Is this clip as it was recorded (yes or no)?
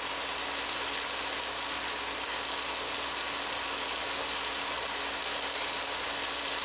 yes